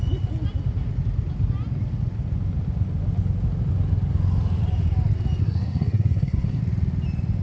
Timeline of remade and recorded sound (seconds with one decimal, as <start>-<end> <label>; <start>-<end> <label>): 0.0-5.4 recorded; 5.4-6.6 remade; 6.6-7.4 recorded